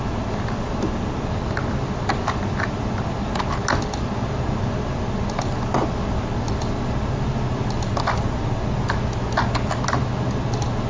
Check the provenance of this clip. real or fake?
real